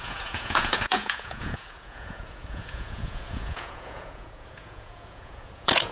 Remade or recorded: remade